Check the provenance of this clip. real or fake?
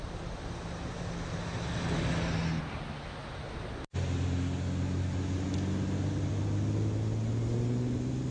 real